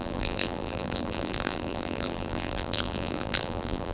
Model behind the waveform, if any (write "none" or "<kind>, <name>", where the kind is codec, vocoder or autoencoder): vocoder, BigVGAN v2